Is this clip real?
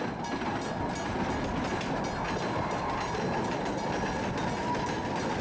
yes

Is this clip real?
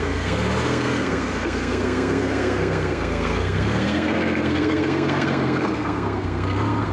no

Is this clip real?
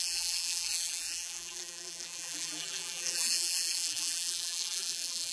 no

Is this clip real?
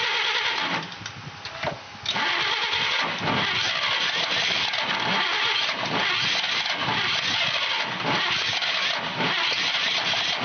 yes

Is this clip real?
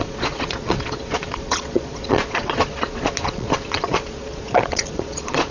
no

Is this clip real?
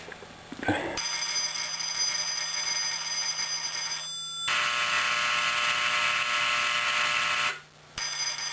yes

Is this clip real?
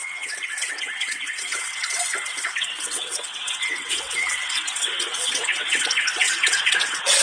no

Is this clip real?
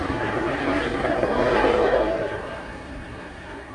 no